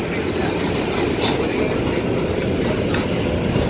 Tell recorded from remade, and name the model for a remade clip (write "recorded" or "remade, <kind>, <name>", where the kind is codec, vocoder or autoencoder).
recorded